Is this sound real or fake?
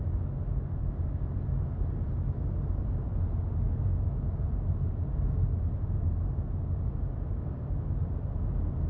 real